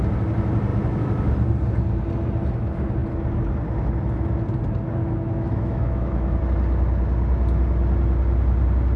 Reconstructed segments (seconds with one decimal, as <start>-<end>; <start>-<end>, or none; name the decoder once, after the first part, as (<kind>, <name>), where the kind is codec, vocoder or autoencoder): 0.7-1.3 (autoencoder, DAC-VAE); 5.0-6.4